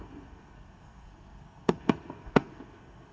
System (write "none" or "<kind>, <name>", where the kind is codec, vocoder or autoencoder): codec, SNAC